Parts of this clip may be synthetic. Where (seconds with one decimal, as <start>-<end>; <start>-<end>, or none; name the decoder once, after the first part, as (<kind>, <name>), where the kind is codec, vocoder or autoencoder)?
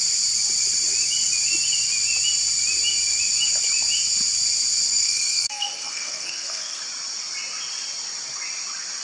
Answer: 4.9-6.8 (codec, SNAC)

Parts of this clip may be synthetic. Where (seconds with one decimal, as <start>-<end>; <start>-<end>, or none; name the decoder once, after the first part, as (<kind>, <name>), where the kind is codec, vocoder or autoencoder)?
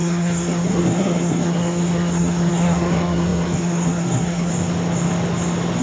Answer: 0.0-4.5 (codec, SNAC)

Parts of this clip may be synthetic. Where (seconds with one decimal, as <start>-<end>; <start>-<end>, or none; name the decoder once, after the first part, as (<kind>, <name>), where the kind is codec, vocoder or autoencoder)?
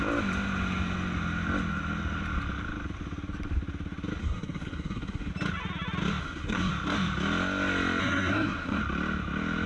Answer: 4.2-5.3 (codec, SNAC); 6.2-6.7; 8.0-8.8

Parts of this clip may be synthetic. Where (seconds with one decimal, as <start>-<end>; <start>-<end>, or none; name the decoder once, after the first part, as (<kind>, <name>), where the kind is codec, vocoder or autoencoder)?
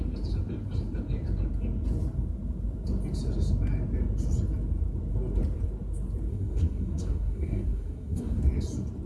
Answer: 6.3-8.4 (codec, SNAC)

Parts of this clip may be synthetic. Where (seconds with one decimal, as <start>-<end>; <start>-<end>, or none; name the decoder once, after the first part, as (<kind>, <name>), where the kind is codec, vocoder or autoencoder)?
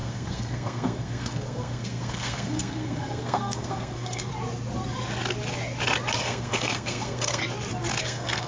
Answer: 0.0-4.3 (codec, SNAC); 6.2-7.4; 8.0-8.5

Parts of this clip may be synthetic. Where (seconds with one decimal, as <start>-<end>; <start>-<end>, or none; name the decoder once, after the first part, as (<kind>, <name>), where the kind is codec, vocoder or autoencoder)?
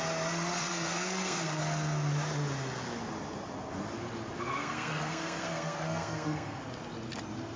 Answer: 0.7-1.6 (codec, SNAC); 4.6-6.6